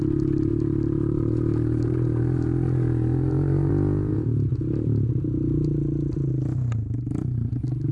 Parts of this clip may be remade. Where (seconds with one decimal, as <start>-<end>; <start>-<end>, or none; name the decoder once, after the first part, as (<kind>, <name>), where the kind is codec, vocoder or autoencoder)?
0.5-3.7 (vocoder, BigVGAN v2); 4.5-6.3